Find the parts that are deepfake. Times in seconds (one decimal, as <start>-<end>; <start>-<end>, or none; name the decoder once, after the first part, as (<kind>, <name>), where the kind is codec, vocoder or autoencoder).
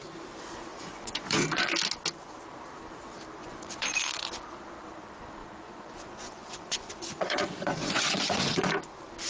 0.7-1.7 (vocoder, Vocos); 3.4-4.0; 5.4-8.7